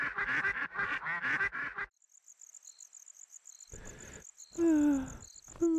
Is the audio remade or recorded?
recorded